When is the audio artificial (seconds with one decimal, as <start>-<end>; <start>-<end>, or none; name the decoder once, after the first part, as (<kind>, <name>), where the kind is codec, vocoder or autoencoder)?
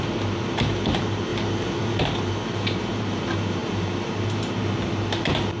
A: 0.0-5.6 (vocoder, BigVGAN v2)